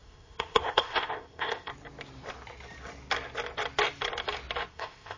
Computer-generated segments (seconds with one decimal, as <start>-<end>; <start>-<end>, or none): 0.0-1.7; 4.7-5.2